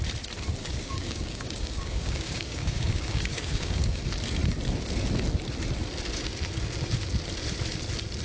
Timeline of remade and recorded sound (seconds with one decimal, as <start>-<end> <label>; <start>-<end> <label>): 0.0-0.6 recorded; 0.6-4.0 remade; 4.0-8.2 recorded